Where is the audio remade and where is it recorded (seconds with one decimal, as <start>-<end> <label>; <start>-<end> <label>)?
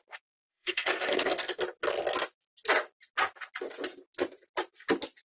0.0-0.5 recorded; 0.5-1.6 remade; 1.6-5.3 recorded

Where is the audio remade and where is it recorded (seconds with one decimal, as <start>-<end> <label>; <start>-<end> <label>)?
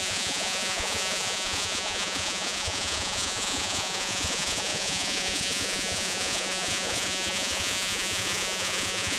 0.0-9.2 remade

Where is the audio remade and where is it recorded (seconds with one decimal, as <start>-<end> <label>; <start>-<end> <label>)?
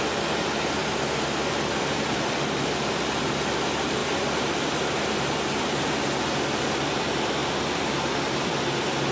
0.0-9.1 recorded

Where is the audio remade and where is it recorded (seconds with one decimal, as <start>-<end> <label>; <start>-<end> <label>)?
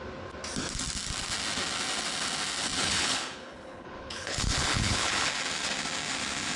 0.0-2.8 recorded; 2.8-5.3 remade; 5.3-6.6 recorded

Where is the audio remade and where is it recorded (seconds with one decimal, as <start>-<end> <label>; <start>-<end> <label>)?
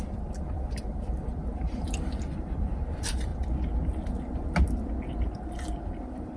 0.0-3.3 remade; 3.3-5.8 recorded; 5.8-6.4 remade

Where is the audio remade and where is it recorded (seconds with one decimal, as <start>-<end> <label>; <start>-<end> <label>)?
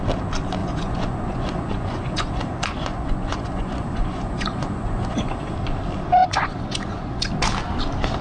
0.0-0.6 recorded; 0.6-5.5 remade; 5.5-6.2 recorded; 6.2-7.3 remade; 7.3-8.2 recorded